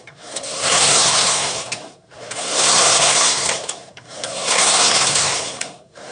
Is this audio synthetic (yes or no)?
yes